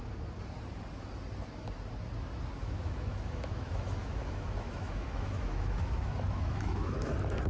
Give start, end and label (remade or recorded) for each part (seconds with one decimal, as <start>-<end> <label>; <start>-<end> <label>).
0.0-2.6 recorded; 2.6-7.1 remade; 7.1-7.5 recorded

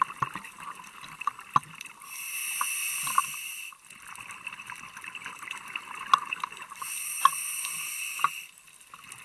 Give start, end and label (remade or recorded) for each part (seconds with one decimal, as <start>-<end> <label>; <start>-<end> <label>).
0.0-9.2 recorded

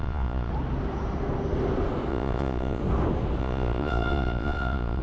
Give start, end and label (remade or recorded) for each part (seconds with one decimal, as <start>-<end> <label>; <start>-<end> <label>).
0.0-0.5 remade; 0.5-2.1 recorded; 2.1-2.8 remade; 2.8-3.4 recorded; 3.4-5.0 remade

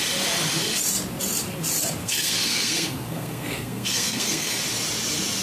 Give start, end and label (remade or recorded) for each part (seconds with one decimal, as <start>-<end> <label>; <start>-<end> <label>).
0.0-2.0 recorded; 2.0-4.6 remade; 4.6-5.4 recorded

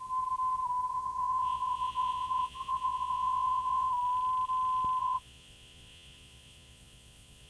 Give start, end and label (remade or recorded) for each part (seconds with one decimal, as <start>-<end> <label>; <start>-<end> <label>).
0.0-0.9 recorded; 0.9-3.9 remade; 3.9-5.0 recorded; 5.0-7.5 remade